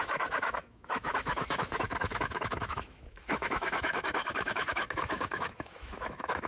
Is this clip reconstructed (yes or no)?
yes